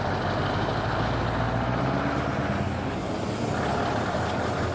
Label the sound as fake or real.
real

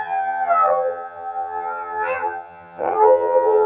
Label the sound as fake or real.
fake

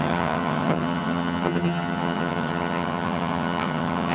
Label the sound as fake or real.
fake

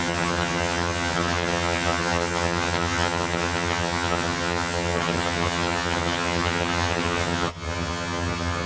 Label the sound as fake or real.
fake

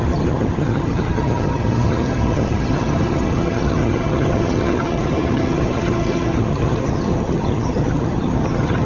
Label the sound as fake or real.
fake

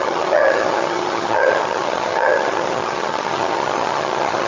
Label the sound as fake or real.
fake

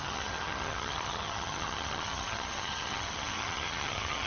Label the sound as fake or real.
fake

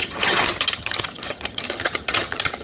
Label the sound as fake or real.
fake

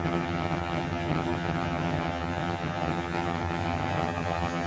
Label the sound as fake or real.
fake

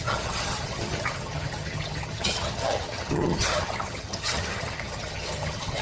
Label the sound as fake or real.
fake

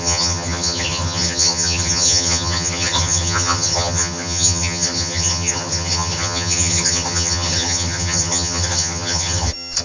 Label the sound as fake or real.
fake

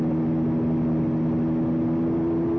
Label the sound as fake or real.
real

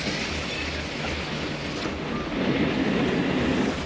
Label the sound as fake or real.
real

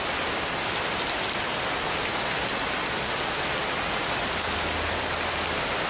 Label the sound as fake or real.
real